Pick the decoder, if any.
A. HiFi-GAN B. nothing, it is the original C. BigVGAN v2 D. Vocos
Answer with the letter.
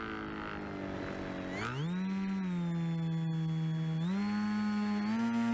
B